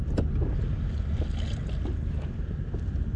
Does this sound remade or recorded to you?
recorded